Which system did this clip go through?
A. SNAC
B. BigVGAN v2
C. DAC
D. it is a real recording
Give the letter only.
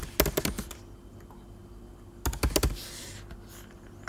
D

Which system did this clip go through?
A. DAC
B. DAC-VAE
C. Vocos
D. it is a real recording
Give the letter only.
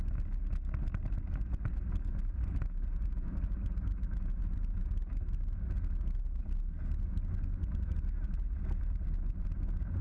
D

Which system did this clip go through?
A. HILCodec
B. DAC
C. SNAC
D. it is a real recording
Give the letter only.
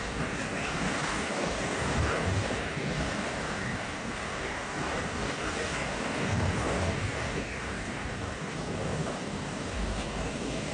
B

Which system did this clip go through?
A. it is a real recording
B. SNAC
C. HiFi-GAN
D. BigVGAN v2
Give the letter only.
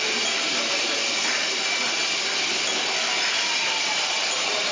A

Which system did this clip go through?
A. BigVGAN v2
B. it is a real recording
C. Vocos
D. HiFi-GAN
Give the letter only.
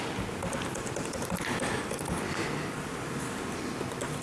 B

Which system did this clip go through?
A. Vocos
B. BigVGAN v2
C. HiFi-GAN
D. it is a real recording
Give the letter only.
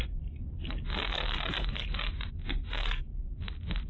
D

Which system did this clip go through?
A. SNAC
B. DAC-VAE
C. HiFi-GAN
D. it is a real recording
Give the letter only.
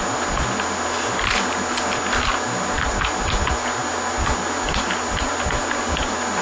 D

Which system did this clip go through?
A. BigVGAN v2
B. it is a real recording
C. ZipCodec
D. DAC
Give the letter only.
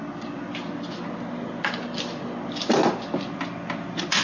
B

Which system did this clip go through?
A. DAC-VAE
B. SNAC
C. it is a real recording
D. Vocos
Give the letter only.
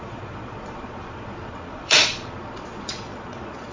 D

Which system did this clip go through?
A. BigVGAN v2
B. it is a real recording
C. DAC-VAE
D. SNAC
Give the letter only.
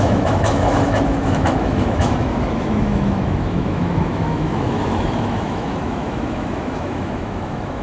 C